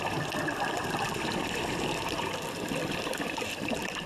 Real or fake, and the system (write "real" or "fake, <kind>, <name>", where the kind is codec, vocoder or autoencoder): fake, vocoder, BigVGAN v2